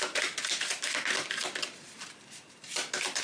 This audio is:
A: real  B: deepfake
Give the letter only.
A